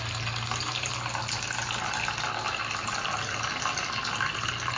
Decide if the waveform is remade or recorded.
recorded